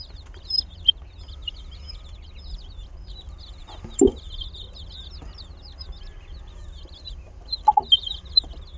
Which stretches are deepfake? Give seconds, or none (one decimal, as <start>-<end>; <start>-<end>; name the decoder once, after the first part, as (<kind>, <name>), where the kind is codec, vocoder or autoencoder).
none